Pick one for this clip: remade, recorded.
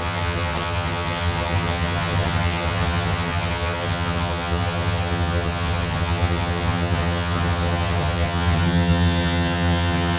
remade